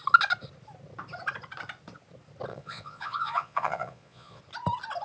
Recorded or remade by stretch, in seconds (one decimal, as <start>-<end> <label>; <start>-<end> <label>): 0.0-2.5 recorded; 2.5-4.4 remade; 4.4-5.0 recorded